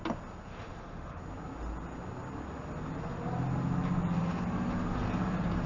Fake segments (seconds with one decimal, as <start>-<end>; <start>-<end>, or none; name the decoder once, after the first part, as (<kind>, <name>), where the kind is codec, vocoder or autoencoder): 0.5-1.2 (autoencoder, DAC-VAE)